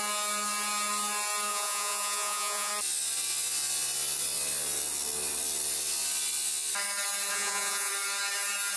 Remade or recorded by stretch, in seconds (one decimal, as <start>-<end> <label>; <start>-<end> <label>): 0.0-1.5 recorded; 1.5-2.7 remade; 2.7-7.3 recorded; 7.3-7.9 remade; 7.9-8.8 recorded